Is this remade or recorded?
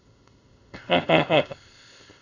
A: remade